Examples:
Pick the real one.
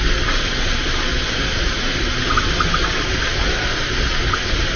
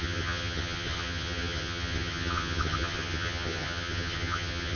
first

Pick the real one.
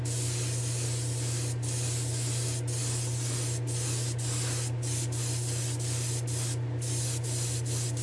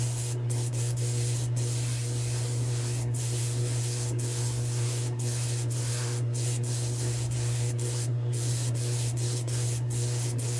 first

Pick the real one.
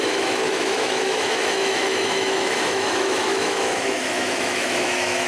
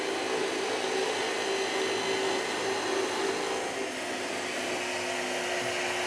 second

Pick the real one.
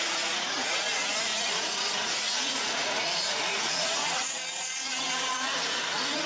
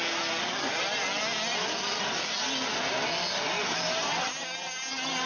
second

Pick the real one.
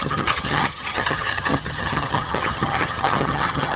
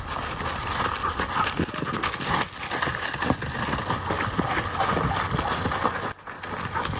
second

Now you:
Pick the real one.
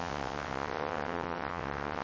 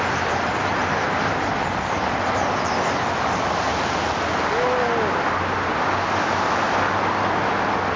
second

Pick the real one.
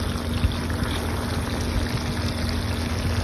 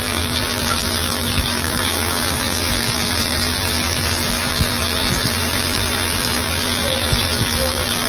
first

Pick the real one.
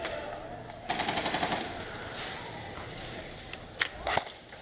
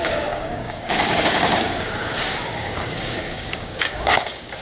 first